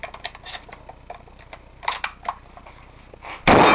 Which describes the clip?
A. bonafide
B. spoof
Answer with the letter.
A